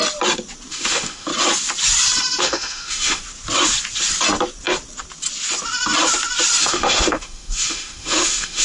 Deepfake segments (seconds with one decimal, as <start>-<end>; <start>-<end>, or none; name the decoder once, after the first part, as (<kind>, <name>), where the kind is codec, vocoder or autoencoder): 0.7-1.3 (autoencoder, DAC-VAE); 2.4-3.2; 6.6-8.6